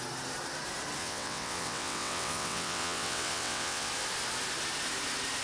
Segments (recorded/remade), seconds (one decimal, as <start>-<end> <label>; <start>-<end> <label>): 0.0-1.0 recorded; 1.0-3.9 remade; 3.9-5.4 recorded